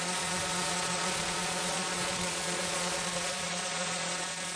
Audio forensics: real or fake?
fake